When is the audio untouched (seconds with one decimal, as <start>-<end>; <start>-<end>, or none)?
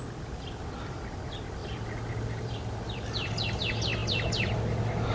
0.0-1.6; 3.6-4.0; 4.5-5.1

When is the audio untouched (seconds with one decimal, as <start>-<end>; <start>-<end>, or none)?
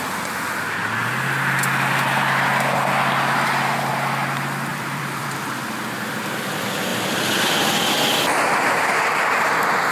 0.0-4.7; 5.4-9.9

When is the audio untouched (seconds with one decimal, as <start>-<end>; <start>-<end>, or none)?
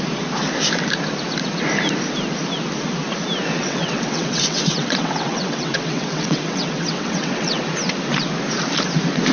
0.0-3.6; 7.6-9.3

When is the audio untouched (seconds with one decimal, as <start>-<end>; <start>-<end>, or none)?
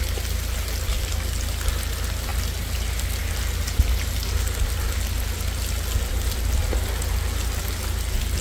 0.0-8.4